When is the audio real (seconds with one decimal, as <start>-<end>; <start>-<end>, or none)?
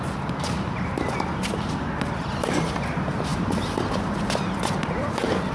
0.0-5.5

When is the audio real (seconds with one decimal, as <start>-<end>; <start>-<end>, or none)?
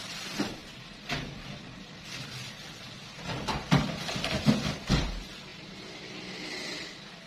5.5-7.3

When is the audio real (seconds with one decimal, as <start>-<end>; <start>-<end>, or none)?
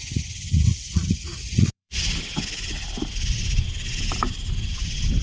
0.0-0.7; 2.0-5.2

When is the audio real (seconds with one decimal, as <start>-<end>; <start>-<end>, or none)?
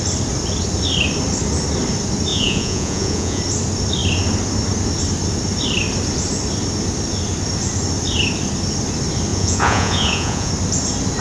0.0-2.3; 3.4-9.3; 10.5-11.2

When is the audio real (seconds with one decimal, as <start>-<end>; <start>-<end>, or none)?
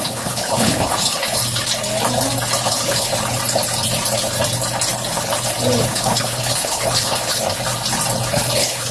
1.4-2.7; 3.1-5.8; 7.4-8.3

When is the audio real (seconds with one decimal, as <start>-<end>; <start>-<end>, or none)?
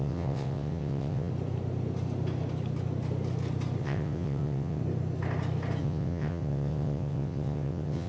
1.3-3.8; 4.8-5.8